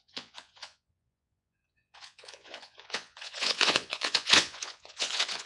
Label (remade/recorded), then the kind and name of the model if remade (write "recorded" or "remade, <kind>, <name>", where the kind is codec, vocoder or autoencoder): remade, vocoder, Vocos